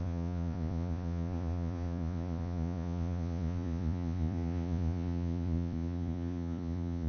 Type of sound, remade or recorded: remade